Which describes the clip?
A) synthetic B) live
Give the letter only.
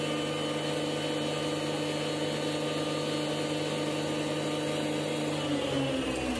B